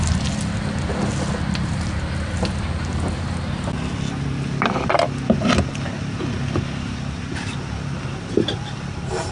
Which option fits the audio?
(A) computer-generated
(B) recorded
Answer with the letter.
B